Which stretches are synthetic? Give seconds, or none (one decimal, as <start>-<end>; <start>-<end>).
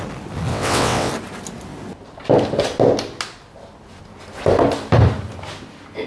0.5-1.1